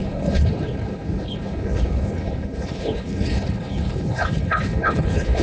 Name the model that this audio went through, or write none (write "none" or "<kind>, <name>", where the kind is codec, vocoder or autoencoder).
codec, HILCodec